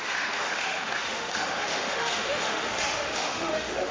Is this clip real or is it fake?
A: fake